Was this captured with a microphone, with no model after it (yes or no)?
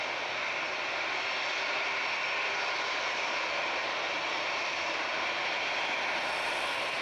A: yes